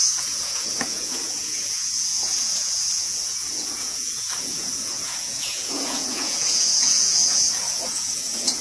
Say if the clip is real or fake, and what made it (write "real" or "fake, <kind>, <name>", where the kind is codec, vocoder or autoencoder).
fake, vocoder, Vocos